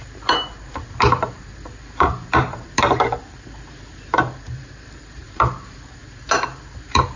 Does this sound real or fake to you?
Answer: fake